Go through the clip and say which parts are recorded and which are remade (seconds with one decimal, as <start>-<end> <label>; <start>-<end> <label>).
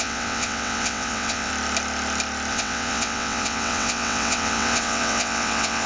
0.0-1.5 remade; 1.5-2.5 recorded; 2.5-5.9 remade